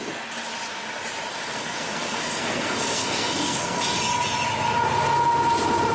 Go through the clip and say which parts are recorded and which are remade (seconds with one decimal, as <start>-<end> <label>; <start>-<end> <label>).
0.0-1.3 recorded; 1.3-3.8 remade; 3.8-5.9 recorded